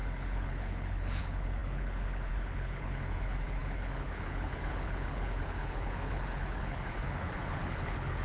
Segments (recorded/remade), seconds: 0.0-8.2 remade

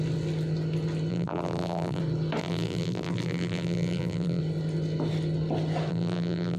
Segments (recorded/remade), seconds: 0.0-1.1 recorded; 1.1-2.0 remade; 2.0-2.4 recorded; 2.4-4.4 remade; 4.4-5.9 recorded; 5.9-6.6 remade